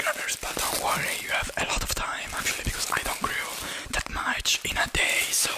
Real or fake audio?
real